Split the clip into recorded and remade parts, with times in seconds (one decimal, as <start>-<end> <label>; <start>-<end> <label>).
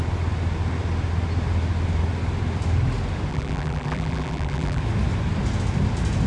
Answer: 0.0-3.3 recorded; 3.3-4.8 remade; 4.8-6.3 recorded